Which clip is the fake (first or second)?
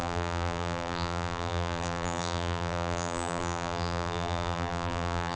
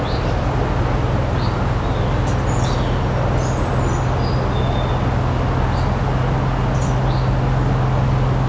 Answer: first